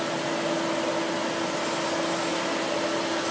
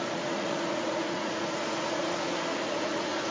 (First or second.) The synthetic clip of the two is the second